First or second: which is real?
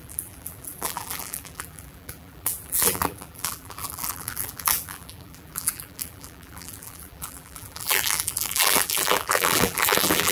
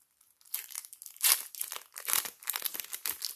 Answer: second